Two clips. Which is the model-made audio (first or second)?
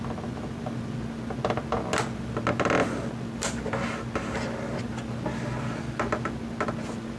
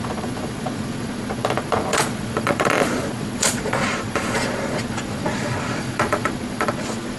second